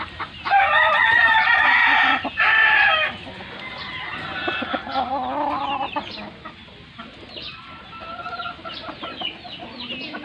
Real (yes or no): yes